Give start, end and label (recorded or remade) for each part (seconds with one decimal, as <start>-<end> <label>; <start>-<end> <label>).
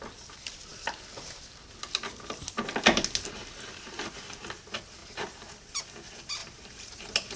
0.0-5.0 recorded; 5.0-5.8 remade; 5.8-6.4 recorded; 6.4-7.4 remade